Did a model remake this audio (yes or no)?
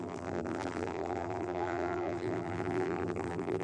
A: yes